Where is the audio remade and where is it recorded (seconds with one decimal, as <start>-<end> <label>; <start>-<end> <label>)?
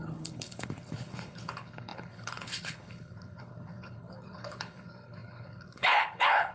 0.0-6.5 remade